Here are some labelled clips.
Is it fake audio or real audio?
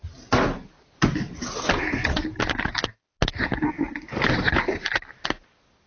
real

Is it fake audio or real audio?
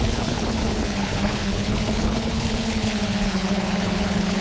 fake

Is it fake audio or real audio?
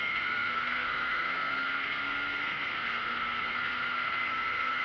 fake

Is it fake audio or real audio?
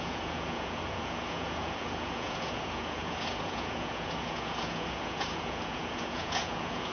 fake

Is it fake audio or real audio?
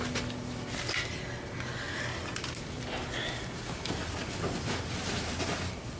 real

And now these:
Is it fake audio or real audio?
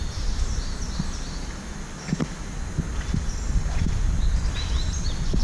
real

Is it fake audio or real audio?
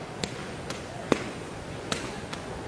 fake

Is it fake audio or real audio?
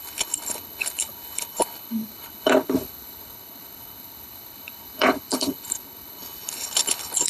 fake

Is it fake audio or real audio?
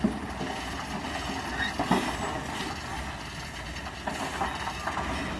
real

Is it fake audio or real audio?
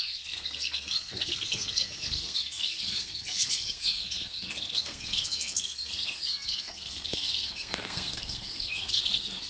fake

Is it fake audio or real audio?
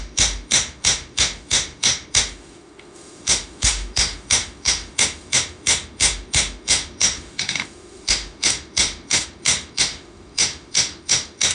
fake